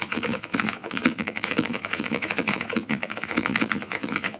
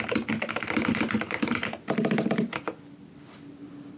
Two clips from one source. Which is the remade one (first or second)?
first